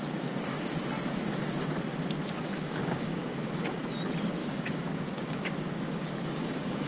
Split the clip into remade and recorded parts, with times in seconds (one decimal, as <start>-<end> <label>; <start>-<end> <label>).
0.0-2.8 recorded; 2.8-3.7 remade; 3.7-4.4 recorded; 4.4-6.9 remade